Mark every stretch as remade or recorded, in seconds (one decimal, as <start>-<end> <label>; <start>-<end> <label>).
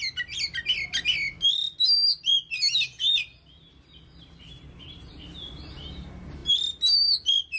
0.0-7.6 recorded